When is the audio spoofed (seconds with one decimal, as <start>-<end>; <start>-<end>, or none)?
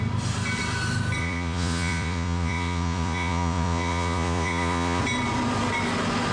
1.2-5.0